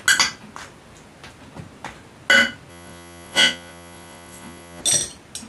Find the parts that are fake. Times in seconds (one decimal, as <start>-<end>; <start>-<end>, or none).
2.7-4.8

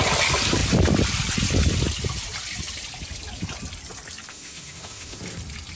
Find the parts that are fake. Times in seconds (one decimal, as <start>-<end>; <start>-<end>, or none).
4.3-5.2

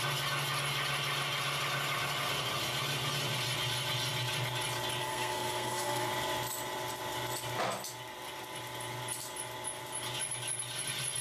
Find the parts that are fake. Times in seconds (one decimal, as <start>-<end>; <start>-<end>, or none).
5.0-6.1